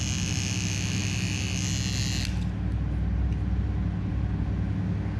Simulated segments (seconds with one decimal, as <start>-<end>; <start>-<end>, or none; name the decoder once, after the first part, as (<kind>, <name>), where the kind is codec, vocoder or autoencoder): none